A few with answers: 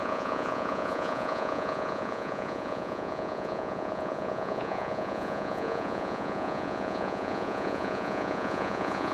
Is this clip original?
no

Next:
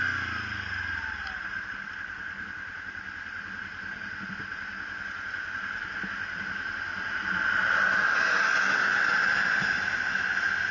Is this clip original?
yes